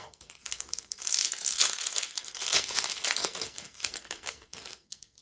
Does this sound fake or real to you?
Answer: fake